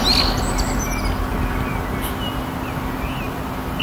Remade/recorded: recorded